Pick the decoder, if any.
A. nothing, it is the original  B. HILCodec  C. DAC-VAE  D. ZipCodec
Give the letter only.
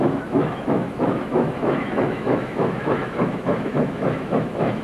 C